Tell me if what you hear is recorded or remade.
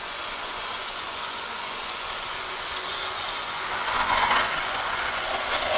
remade